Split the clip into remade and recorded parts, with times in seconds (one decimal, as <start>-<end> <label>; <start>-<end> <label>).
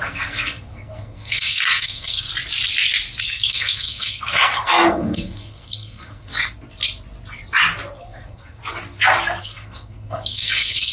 0.0-2.3 remade; 2.3-3.2 recorded; 3.2-6.3 remade; 6.3-8.0 recorded; 8.0-8.6 remade; 8.6-9.4 recorded; 9.4-10.9 remade